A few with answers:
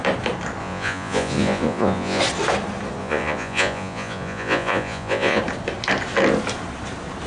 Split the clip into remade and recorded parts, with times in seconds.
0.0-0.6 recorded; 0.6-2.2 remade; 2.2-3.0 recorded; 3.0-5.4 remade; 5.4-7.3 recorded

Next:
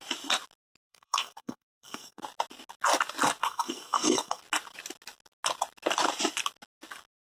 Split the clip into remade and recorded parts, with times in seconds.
0.0-0.9 recorded; 0.9-2.2 remade; 2.2-3.4 recorded; 3.4-4.4 remade; 4.4-7.3 recorded

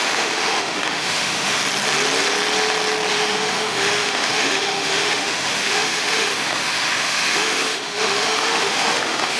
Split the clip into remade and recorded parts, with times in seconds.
0.0-1.6 remade; 1.6-3.1 recorded; 3.1-9.4 remade

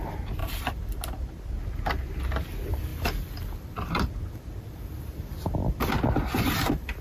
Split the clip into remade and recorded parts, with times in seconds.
0.0-0.4 recorded; 0.4-1.4 remade; 1.4-2.9 recorded; 2.9-5.9 remade; 5.9-7.0 recorded

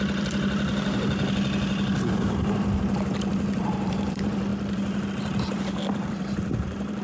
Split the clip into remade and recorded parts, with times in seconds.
0.0-0.7 remade; 0.7-3.6 recorded; 3.6-4.5 remade; 4.5-5.1 recorded; 5.1-7.0 remade

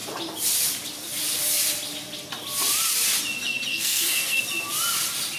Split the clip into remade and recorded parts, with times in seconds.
0.0-3.7 recorded; 3.7-4.4 remade; 4.4-5.4 recorded